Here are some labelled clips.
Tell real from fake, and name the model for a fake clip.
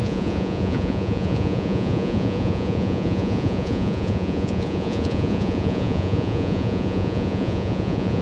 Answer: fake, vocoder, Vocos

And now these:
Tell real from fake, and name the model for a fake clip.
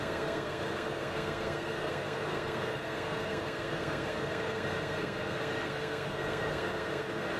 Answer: fake, codec, SNAC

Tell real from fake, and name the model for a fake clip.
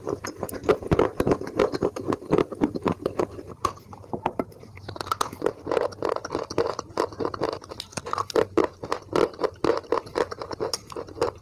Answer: real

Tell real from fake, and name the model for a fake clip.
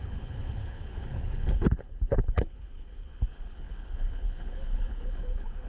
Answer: fake, codec, HILCodec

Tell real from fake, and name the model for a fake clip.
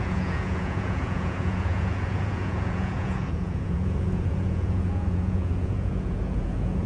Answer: fake, vocoder, Vocos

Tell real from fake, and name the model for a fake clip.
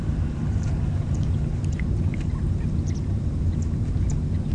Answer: fake, vocoder, BigVGAN v2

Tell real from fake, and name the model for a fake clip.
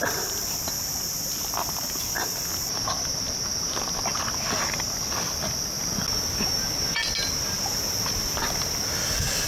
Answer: real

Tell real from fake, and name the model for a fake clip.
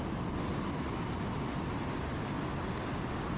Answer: real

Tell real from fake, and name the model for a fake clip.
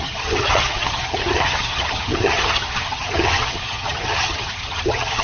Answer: fake, vocoder, HiFi-GAN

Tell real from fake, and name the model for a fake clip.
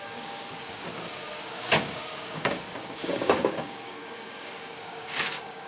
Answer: fake, codec, DAC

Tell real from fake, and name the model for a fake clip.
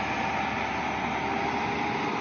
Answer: real